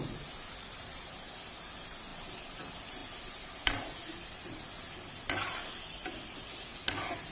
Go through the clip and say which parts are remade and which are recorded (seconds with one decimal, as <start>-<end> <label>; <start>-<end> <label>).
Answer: 0.0-7.3 recorded